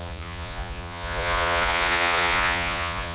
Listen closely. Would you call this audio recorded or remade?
remade